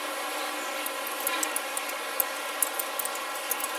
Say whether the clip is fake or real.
real